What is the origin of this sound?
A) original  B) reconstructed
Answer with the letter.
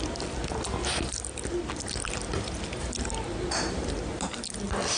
A